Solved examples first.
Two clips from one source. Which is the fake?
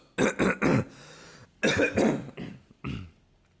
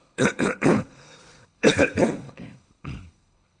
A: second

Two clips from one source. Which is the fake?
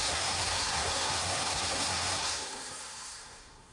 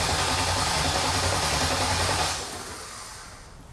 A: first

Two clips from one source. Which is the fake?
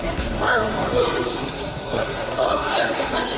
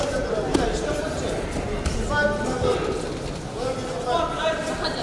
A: first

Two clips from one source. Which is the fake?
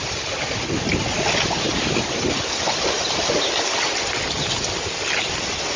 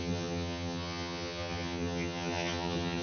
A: second